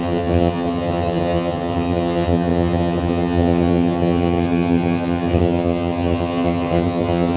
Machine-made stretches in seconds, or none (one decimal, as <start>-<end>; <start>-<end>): 0.0-7.4